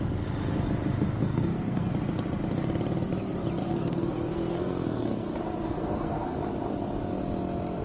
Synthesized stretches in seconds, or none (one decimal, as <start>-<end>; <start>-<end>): 1.2-1.9; 3.6-6.4